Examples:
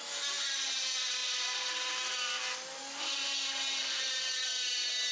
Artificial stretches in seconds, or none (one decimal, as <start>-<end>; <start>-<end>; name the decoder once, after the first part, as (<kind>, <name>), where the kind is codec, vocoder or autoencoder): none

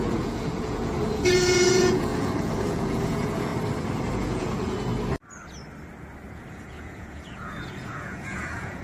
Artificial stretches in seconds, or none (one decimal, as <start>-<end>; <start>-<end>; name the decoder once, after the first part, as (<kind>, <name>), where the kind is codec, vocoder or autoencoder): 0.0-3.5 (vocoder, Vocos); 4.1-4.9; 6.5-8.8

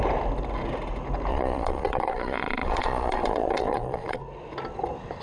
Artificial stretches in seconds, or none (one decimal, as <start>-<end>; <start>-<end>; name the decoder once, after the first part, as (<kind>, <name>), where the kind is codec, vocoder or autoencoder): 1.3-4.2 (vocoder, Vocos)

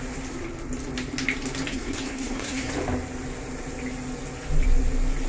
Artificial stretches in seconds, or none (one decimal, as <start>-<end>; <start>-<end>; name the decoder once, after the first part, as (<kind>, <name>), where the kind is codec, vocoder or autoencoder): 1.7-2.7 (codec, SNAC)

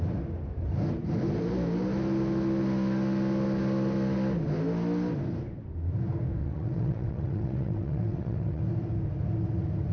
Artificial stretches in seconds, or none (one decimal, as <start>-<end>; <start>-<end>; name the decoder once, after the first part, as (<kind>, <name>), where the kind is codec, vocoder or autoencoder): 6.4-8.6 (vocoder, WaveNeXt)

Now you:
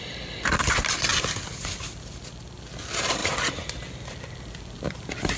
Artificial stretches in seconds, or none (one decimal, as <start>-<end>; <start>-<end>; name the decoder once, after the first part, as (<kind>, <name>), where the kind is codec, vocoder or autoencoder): none

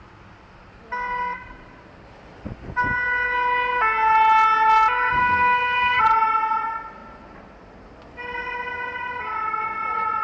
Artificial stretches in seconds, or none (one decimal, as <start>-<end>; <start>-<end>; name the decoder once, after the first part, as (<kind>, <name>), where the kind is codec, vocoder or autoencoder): 5.2-6.0 (codec, SNAC)